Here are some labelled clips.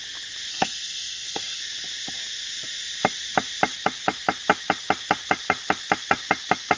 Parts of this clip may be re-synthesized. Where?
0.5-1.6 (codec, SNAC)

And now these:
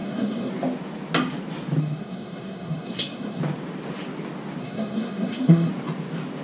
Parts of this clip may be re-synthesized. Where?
0.0-0.5 (codec, SNAC); 1.8-3.4; 4.6-5.7

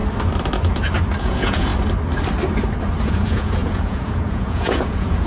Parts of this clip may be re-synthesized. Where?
1.2-1.7 (vocoder, Vocos); 3.1-5.3

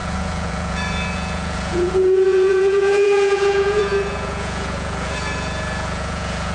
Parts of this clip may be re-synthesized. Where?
0.0-6.5 (vocoder, Vocos)

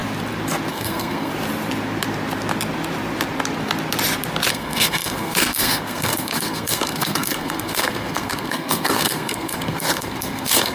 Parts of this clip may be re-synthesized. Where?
0.7-1.3 (codec, SNAC); 4.5-10.7